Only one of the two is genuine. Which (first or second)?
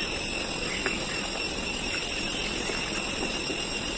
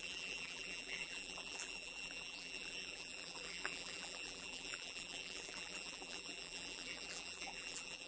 first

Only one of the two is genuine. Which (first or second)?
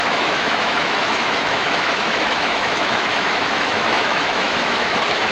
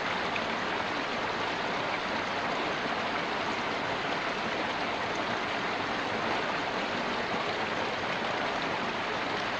second